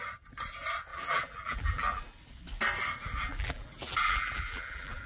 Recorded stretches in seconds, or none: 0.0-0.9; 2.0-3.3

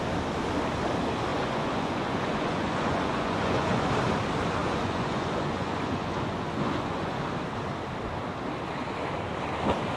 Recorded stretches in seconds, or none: 0.0-1.3; 3.9-4.6; 7.2-10.0

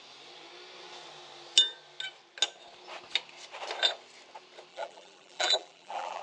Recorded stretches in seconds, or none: 0.0-4.7